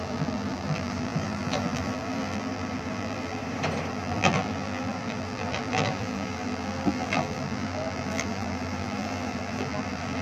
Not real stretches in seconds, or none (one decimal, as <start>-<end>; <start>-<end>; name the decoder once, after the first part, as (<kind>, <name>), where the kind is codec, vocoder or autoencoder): 0.0-3.4 (vocoder, BigVGAN v2); 3.9-10.2